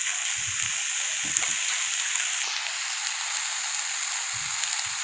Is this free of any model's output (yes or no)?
yes